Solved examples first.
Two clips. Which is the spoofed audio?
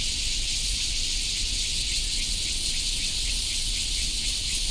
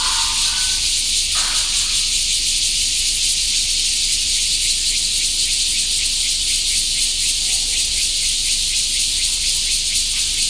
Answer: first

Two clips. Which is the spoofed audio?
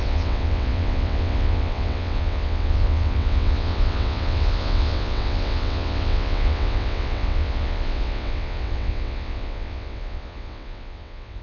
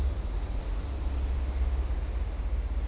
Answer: first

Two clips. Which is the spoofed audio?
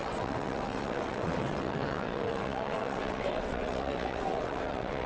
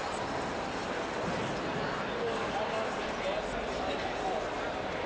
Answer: first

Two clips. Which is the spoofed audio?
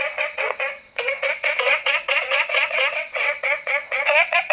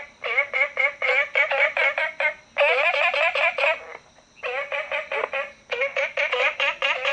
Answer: first